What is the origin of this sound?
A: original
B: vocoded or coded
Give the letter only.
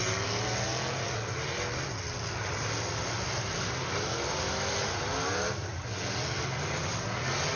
A